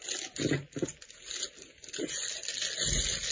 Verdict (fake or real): real